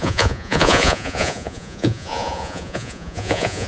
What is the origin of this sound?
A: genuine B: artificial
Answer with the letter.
B